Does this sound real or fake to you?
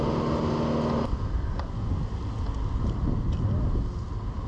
real